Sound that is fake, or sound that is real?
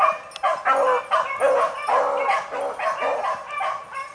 real